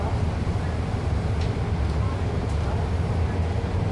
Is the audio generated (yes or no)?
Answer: no